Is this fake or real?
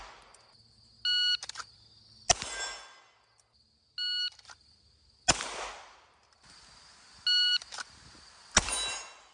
real